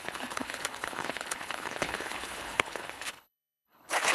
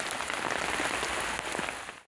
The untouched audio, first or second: second